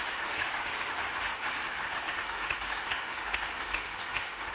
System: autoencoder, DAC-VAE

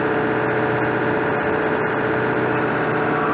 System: none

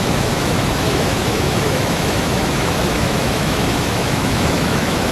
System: autoencoder, DAC-VAE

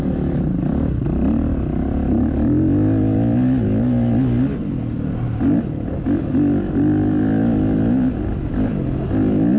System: none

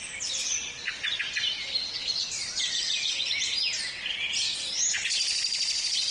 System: none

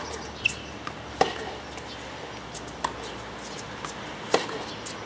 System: none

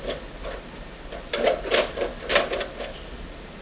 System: none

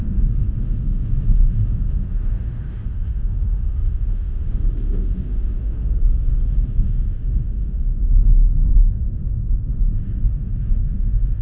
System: autoencoder, DAC-VAE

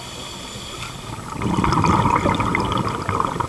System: none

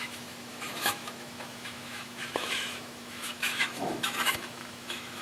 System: autoencoder, DAC-VAE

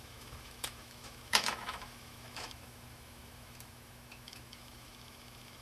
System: autoencoder, DAC-VAE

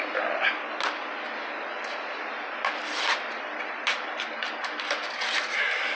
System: none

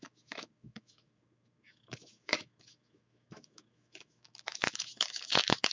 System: autoencoder, DAC-VAE